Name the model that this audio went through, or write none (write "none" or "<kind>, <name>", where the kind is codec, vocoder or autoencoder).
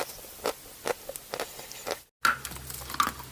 none